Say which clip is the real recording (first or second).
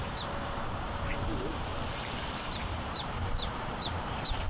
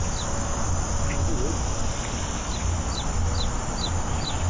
second